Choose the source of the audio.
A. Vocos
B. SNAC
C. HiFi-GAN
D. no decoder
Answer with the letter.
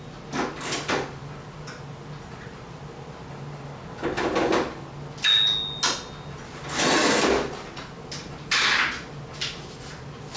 D